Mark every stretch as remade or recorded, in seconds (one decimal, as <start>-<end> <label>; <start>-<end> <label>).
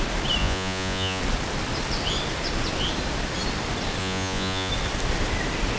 0.0-0.4 recorded; 0.4-1.2 remade; 1.2-4.0 recorded; 4.0-4.7 remade; 4.7-5.8 recorded